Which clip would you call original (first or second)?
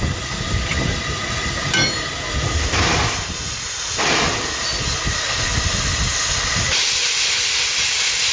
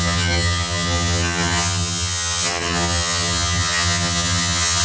first